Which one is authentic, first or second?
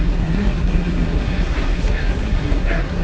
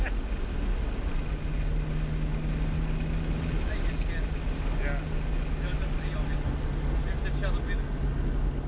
second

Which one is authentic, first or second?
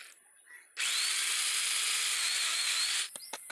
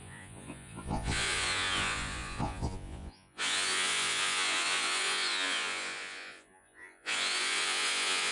first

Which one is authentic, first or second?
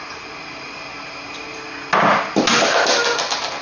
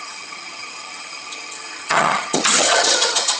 first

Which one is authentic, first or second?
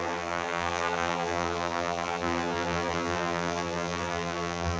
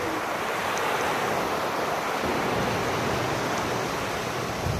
second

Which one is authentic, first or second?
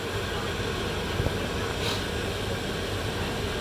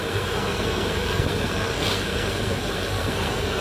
first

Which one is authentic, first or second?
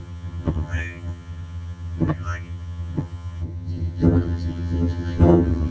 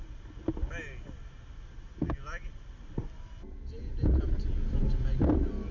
second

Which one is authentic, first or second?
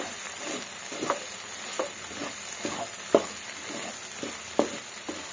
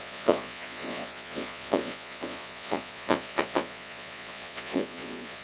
first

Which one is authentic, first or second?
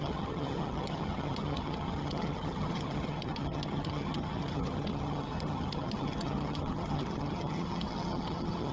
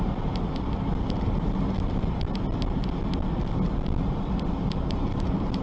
second